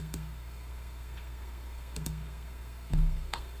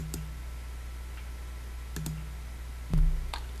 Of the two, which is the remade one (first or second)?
first